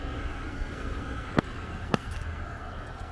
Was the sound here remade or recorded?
remade